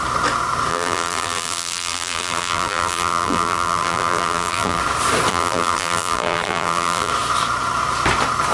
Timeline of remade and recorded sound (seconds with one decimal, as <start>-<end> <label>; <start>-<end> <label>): 0.0-0.7 recorded; 0.7-4.8 remade; 4.8-5.3 recorded; 5.3-7.1 remade; 7.1-8.5 recorded